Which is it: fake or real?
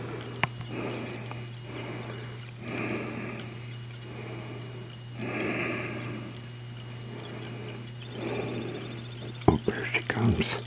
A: real